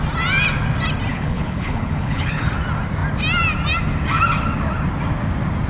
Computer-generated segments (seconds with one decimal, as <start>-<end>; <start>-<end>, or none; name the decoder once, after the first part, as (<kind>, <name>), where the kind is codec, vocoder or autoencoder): 1.1-2.5 (codec, HILCodec)